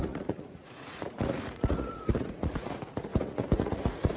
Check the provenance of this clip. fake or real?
fake